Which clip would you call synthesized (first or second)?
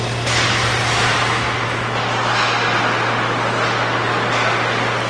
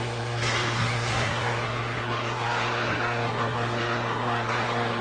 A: second